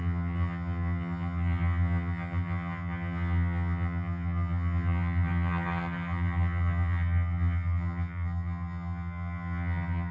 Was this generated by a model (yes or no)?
yes